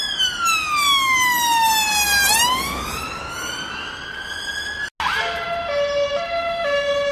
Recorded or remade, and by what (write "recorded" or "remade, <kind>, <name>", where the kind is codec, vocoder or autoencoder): recorded